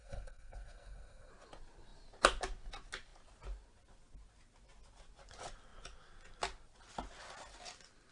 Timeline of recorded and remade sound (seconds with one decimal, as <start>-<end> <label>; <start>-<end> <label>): 0.0-1.3 remade; 1.3-8.1 recorded